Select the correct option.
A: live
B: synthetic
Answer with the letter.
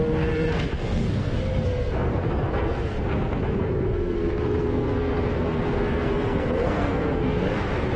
B